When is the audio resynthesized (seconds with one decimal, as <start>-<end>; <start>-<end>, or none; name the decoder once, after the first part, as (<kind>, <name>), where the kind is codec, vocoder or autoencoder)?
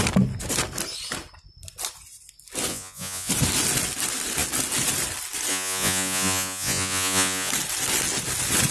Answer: 2.7-3.3 (vocoder, Vocos); 5.5-7.5